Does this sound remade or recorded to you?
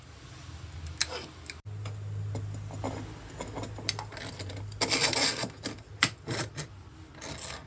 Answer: recorded